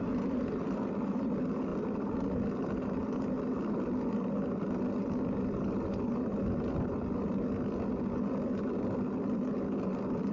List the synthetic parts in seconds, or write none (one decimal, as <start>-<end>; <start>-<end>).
none